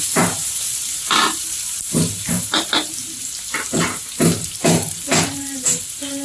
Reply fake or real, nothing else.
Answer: fake